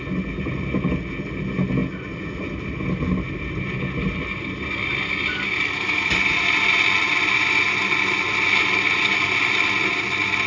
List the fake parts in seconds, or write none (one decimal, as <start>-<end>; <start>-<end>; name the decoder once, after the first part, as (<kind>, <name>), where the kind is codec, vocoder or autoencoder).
none